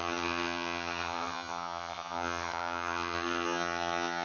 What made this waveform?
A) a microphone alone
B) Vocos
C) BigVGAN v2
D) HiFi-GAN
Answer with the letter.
D